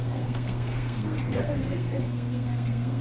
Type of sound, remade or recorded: remade